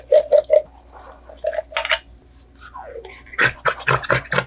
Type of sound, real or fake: real